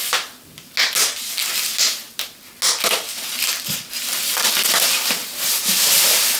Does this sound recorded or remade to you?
recorded